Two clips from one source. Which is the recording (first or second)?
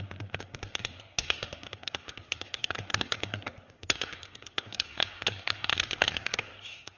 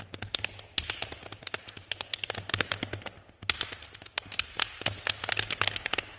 second